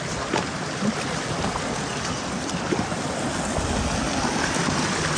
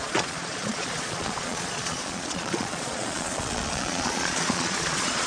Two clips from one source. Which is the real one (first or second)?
first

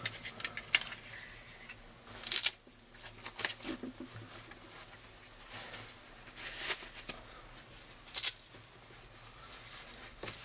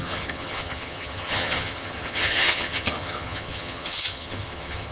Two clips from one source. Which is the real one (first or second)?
first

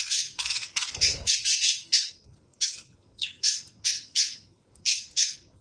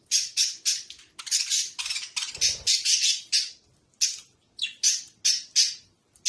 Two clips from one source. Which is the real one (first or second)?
second